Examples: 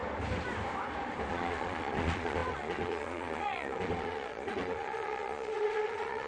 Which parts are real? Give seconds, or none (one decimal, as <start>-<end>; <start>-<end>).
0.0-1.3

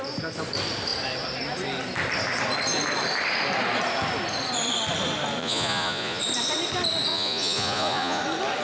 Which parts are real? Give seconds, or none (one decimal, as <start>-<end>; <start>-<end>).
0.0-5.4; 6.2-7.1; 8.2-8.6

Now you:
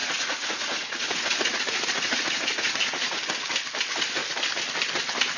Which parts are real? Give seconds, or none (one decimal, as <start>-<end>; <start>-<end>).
3.2-5.4